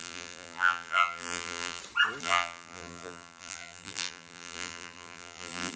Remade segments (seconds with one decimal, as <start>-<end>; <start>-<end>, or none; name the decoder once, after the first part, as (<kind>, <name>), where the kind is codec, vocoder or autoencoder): 0.0-1.8 (vocoder, BigVGAN v2); 2.2-5.8